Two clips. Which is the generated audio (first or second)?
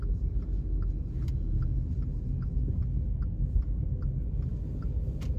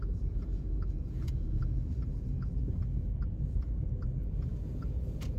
second